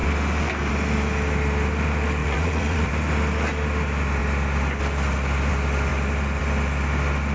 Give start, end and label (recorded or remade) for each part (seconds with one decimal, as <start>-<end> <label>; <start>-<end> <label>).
0.0-2.2 recorded; 2.2-2.9 remade; 2.9-7.3 recorded

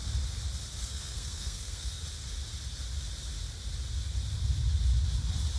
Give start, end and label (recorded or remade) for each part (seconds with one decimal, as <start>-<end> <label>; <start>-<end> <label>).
0.0-0.8 recorded; 0.8-2.0 remade; 2.0-5.6 recorded

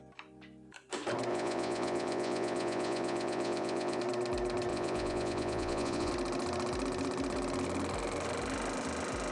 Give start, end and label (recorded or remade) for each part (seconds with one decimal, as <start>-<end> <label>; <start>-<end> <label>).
0.0-1.3 recorded; 1.3-4.0 remade; 4.0-4.7 recorded; 4.7-6.1 remade; 6.1-9.3 recorded

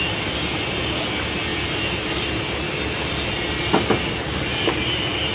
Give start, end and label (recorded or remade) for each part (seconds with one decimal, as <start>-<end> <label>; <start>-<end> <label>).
0.0-5.3 recorded

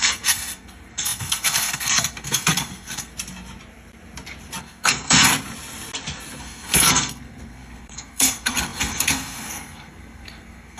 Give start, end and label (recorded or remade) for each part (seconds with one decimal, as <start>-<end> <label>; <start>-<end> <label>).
0.0-3.1 remade; 3.1-4.6 recorded; 4.6-5.3 remade; 5.3-6.4 recorded; 6.4-10.8 remade

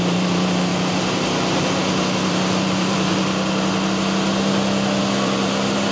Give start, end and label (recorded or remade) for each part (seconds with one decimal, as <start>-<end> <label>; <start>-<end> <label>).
0.0-0.7 remade; 0.7-2.3 recorded; 2.3-3.1 remade; 3.1-5.0 recorded; 5.0-5.9 remade